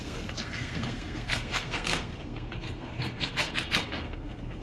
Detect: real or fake fake